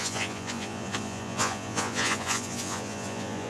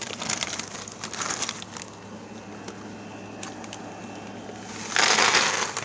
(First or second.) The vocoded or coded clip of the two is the first